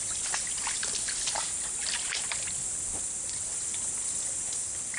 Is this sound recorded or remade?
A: recorded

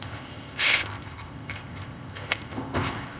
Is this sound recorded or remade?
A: remade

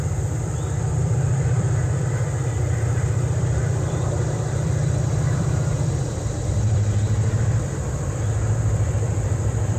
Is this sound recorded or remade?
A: remade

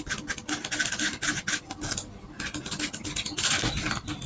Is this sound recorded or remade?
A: recorded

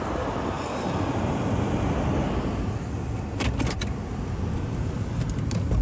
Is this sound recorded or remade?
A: recorded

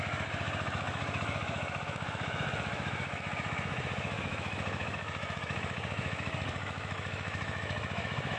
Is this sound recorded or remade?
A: remade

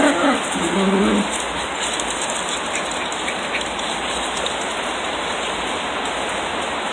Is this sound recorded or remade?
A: recorded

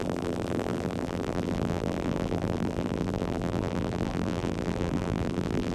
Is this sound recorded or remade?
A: remade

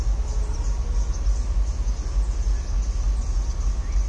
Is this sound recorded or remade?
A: recorded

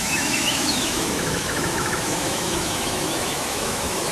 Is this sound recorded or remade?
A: remade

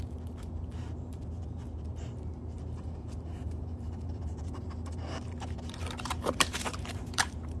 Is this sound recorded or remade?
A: remade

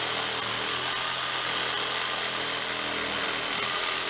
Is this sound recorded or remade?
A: recorded